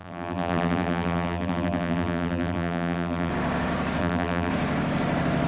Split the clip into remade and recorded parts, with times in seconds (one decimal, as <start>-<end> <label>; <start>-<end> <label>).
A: 0.0-3.3 remade; 3.3-4.0 recorded; 4.0-4.5 remade; 4.5-5.5 recorded